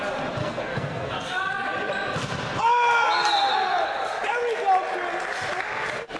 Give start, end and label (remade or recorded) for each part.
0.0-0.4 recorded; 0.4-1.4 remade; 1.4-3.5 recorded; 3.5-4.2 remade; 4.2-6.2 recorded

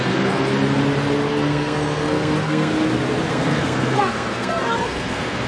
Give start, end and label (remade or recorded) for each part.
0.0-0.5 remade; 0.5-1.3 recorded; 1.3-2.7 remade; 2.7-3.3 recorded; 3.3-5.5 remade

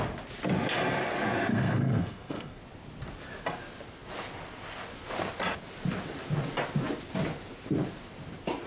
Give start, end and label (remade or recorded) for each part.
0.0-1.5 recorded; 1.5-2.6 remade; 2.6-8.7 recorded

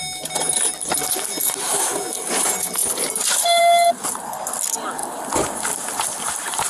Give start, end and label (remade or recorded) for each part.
0.0-6.7 recorded